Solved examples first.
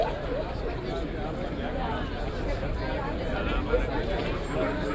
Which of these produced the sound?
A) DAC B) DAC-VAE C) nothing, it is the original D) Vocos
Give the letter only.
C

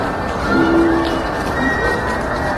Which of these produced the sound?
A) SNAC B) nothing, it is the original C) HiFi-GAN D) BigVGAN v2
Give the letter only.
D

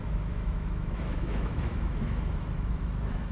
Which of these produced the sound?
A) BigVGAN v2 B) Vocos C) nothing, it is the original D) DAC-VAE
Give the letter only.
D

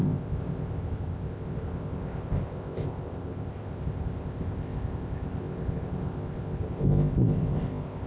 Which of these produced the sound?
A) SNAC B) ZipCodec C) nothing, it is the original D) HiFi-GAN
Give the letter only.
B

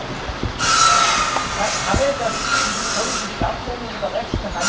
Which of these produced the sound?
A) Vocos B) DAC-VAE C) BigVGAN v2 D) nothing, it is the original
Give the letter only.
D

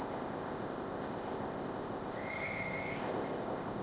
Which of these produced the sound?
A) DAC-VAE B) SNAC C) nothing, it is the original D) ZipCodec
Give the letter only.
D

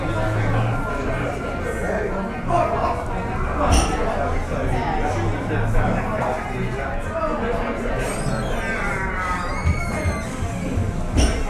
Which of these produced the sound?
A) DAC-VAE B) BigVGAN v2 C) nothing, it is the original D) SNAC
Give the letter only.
C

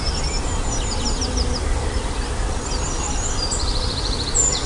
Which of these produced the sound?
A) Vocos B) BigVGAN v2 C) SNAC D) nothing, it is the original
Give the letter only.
D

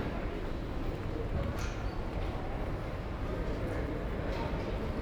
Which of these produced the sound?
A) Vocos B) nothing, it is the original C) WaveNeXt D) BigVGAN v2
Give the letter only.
D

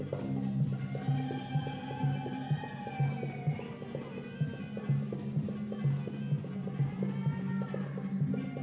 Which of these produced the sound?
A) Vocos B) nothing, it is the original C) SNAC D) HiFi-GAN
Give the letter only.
B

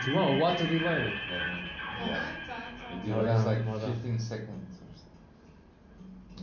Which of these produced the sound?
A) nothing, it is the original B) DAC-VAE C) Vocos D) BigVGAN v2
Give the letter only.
A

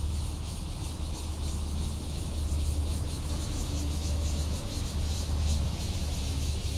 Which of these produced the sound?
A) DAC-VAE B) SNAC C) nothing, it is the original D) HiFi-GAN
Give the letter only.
A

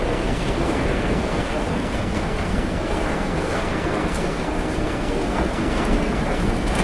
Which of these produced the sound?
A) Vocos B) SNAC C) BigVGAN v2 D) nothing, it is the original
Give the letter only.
B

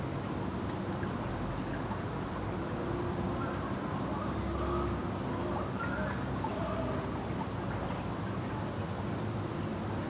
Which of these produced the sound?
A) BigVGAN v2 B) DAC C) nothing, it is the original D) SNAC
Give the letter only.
C